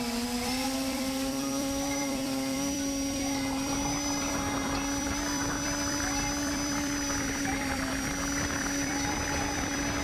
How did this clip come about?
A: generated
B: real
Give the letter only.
A